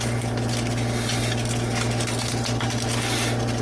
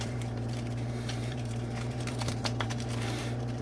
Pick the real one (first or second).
first